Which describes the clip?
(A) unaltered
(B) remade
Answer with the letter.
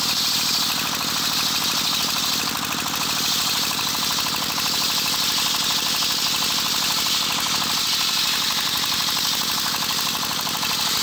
A